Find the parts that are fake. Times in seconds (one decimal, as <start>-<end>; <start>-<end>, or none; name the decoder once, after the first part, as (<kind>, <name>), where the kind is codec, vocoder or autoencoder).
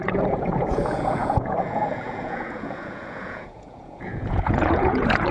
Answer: 0.0-5.3 (vocoder, Vocos)